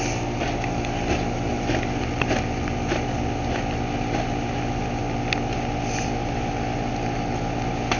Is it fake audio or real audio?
real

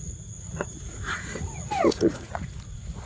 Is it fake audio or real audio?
fake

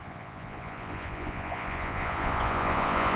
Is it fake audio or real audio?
fake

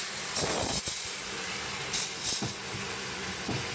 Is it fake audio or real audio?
real